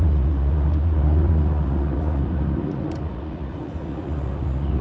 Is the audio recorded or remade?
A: remade